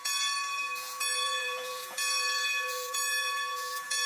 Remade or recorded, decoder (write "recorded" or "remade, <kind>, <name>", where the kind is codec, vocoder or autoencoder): remade, vocoder, Vocos